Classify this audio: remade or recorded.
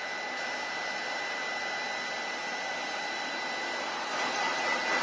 recorded